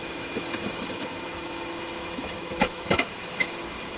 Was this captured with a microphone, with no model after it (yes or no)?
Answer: no